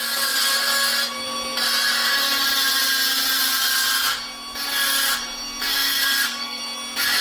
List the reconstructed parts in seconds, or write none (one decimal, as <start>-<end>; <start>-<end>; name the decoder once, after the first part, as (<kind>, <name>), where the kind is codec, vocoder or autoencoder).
5.6-6.6 (codec, SNAC)